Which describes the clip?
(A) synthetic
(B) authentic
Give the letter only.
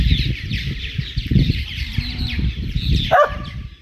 A